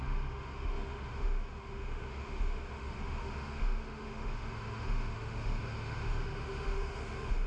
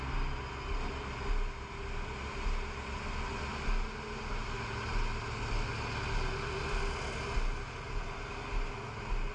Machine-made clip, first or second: first